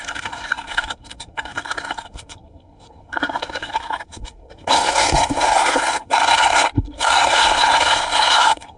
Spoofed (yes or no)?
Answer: yes